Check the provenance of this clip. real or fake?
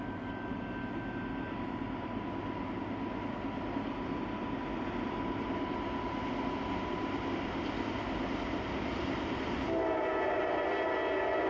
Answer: real